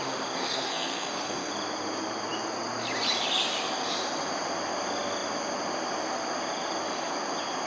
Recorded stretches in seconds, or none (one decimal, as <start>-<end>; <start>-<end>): 0.0-0.4; 1.5-7.7